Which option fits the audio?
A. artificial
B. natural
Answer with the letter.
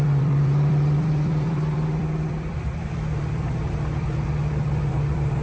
A